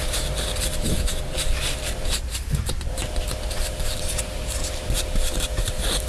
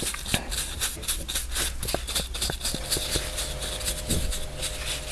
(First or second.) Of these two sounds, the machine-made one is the first